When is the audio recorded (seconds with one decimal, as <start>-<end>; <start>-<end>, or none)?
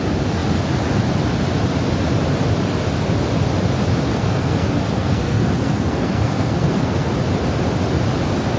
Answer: 0.0-4.1; 7.1-8.6